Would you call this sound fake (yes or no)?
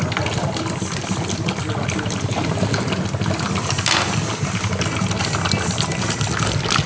no